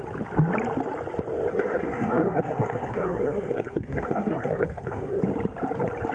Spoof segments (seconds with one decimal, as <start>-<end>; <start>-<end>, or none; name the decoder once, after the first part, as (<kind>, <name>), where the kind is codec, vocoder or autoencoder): 1.5-5.2 (codec, SNAC)